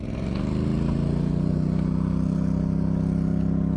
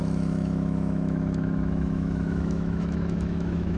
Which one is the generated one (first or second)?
second